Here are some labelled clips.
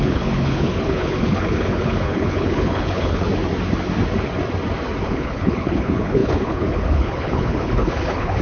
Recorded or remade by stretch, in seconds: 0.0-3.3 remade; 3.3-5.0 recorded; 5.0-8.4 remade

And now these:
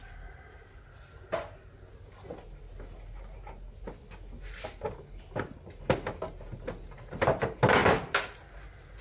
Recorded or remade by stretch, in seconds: 0.0-9.0 recorded